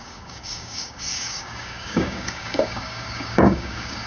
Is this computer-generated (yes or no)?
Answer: yes